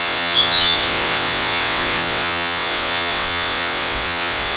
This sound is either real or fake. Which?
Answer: fake